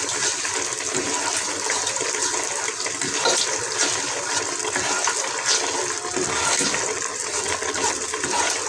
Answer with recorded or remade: recorded